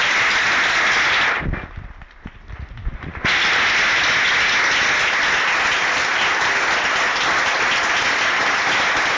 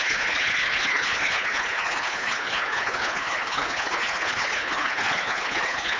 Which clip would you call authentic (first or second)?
first